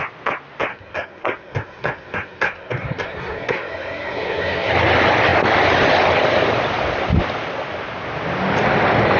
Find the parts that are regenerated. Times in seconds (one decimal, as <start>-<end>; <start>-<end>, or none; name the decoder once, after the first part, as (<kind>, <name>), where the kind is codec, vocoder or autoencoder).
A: 0.7-4.7 (codec, SNAC)